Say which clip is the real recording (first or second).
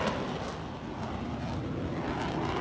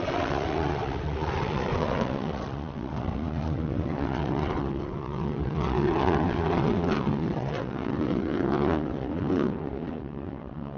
first